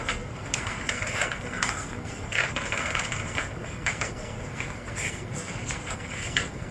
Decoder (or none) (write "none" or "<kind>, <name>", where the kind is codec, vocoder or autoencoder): codec, SNAC